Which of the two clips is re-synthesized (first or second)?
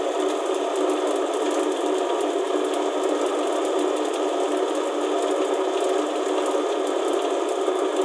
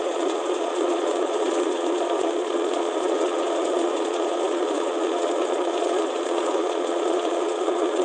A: second